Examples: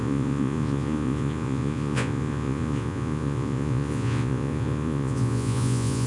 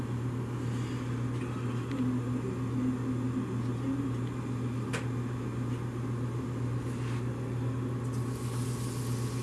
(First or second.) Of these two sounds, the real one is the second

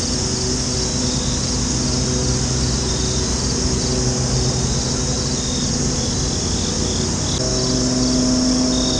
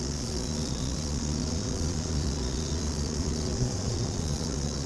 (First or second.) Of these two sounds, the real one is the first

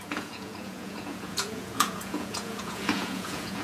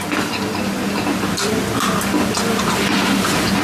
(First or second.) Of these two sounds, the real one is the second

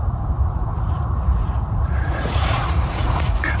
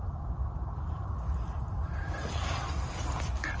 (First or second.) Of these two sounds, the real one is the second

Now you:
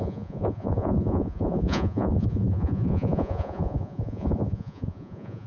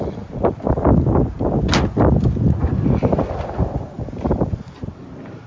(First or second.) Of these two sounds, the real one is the second